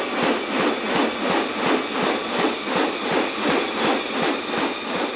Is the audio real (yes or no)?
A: yes